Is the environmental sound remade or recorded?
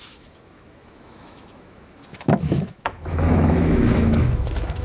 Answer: remade